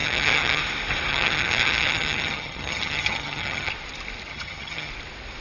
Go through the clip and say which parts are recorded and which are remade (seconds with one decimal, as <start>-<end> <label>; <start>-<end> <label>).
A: 0.0-0.6 remade; 0.6-1.1 recorded; 1.1-3.7 remade; 3.7-4.3 recorded; 4.3-4.9 remade; 4.9-5.4 recorded